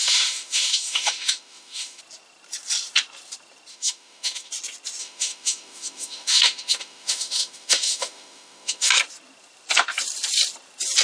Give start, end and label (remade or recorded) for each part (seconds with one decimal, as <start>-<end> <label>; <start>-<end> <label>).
0.0-2.0 remade; 2.0-3.7 recorded; 3.7-4.5 remade; 4.5-5.0 recorded; 5.0-8.9 remade; 8.9-11.0 recorded